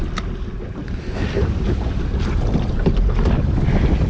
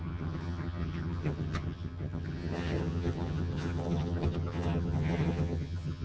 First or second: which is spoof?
second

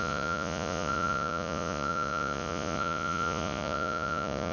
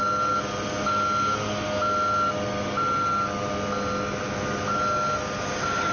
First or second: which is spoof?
first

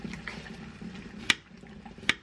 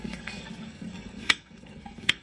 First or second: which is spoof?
second